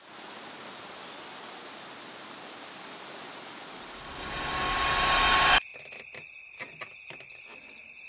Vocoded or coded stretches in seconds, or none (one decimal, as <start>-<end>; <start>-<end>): none

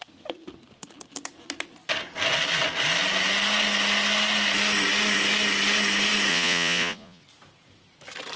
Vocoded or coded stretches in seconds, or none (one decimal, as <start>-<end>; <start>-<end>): 6.3-7.2

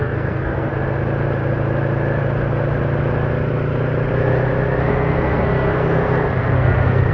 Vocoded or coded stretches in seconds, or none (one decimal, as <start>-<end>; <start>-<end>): 0.0-0.7; 4.9-7.1

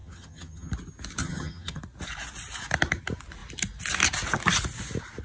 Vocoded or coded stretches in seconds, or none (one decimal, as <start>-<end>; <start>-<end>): 0.0-0.7; 1.2-1.8

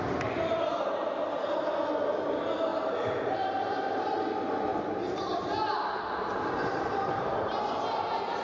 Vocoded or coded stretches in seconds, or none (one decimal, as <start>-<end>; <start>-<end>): none

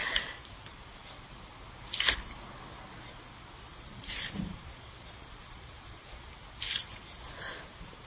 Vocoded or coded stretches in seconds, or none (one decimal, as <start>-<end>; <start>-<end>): 0.0-0.8; 3.9-7.2

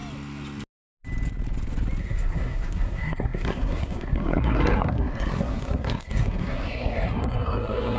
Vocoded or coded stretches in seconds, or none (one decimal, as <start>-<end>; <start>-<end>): 2.0-8.0